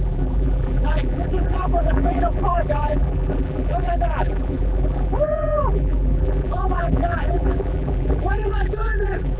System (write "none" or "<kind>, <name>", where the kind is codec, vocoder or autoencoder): vocoder, BigVGAN v2